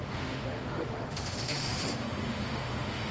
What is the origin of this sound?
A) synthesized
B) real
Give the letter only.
A